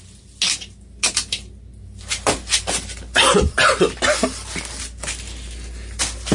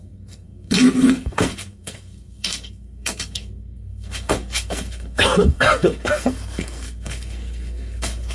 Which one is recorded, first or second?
first